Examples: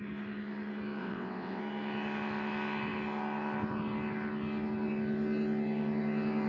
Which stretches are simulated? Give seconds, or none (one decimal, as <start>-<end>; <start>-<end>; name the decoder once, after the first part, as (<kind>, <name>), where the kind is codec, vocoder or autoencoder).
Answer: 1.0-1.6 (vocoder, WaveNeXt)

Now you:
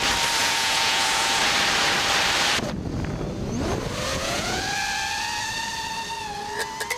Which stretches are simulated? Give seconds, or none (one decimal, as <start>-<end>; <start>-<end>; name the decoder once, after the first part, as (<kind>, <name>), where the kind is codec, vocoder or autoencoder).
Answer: 0.4-1.4 (vocoder, Vocos); 4.1-4.6

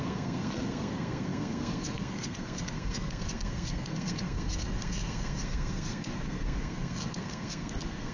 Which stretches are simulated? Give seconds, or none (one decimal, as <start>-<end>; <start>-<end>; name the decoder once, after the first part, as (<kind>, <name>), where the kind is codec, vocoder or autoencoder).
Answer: 0.0-8.1 (codec, SNAC)